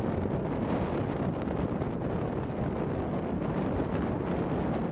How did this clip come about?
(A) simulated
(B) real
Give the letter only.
B